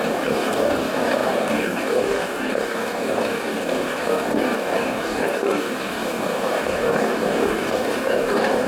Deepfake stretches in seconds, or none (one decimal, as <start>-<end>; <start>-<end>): 0.0-8.7